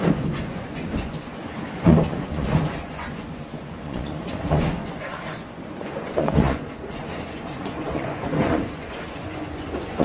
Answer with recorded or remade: remade